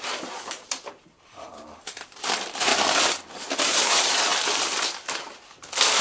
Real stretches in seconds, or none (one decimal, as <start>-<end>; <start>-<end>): 2.7-3.6